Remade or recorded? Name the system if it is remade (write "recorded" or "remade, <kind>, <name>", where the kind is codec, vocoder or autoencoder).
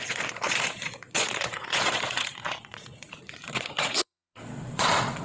remade, vocoder, Vocos